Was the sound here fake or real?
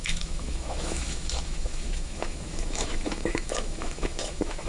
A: fake